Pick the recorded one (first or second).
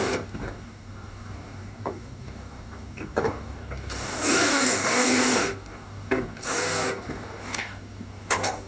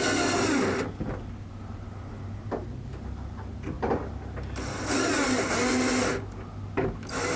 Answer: second